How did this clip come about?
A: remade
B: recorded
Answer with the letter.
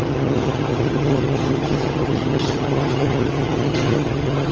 A